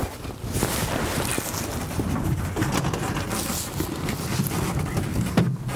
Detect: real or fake real